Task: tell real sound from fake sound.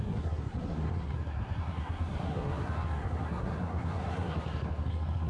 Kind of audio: fake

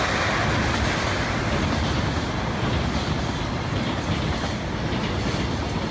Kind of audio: fake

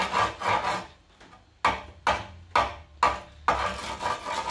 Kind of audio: real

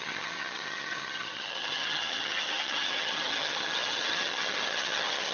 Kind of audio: fake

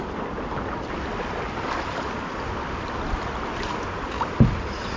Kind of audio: real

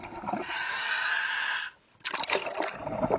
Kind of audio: real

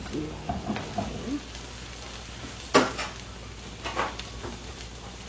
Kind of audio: real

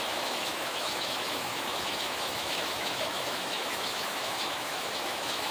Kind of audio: fake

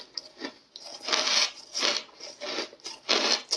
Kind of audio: real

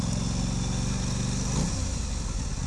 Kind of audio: real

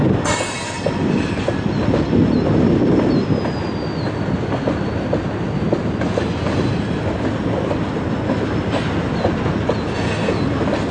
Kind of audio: real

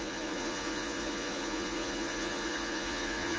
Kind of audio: fake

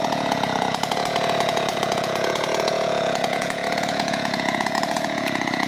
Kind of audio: fake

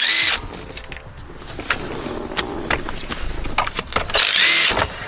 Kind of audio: real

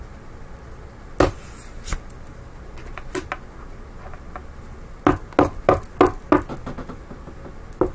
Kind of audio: real